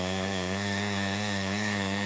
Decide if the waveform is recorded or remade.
remade